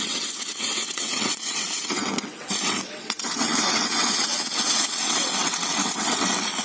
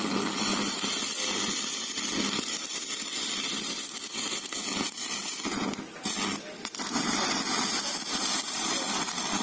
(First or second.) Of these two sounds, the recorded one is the second